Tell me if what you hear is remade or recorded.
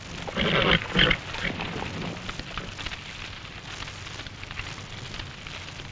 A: recorded